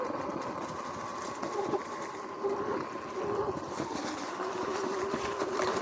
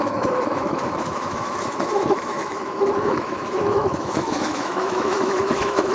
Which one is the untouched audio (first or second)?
first